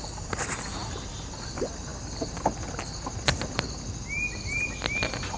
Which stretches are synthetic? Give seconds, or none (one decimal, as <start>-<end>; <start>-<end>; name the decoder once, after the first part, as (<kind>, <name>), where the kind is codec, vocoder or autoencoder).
none